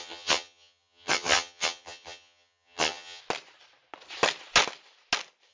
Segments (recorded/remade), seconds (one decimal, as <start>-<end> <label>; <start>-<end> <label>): 0.0-3.2 remade; 3.2-5.5 recorded